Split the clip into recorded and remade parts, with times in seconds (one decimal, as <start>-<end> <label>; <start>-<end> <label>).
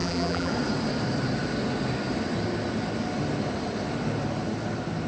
0.0-0.5 remade; 0.5-5.1 recorded